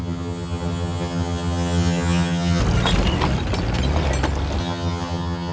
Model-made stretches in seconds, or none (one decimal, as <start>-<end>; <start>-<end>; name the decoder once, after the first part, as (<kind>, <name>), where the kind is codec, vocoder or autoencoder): 0.0-2.6 (vocoder, HiFi-GAN); 4.6-5.5